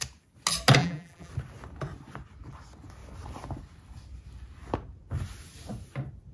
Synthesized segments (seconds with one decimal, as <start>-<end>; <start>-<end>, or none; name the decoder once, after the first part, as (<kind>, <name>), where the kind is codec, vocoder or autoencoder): 0.8-1.3 (vocoder, BigVGAN v2)